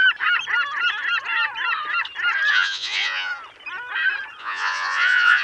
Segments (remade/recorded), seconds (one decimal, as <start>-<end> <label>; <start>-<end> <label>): 0.0-2.5 recorded; 2.5-3.3 remade; 3.3-4.4 recorded; 4.4-5.4 remade